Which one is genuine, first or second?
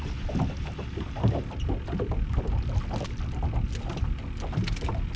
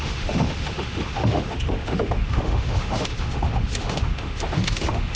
first